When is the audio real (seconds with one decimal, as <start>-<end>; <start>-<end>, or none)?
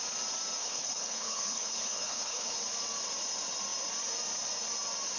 0.0-0.6; 2.6-5.2